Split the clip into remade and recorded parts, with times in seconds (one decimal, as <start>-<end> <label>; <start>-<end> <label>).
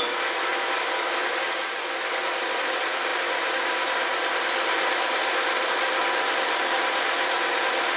0.0-8.0 recorded